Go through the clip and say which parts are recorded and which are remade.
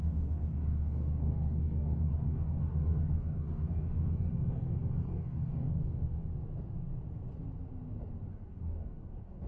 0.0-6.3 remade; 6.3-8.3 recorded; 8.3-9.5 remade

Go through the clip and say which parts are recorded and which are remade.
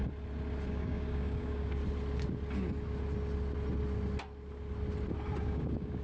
0.0-0.7 recorded; 0.7-1.8 remade; 1.8-5.4 recorded; 5.4-6.0 remade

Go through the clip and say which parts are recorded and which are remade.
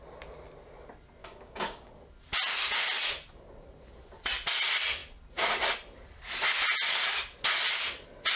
0.0-1.2 recorded; 1.2-1.9 remade; 1.9-8.4 recorded